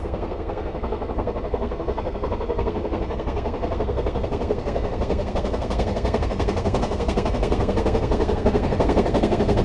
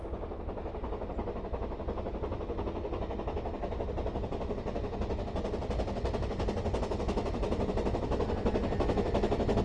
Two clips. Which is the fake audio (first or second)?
first